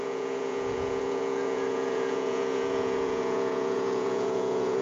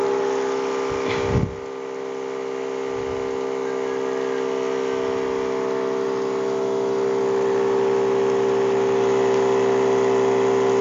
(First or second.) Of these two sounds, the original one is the second